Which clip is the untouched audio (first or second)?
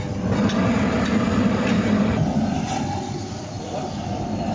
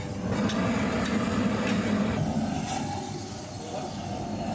second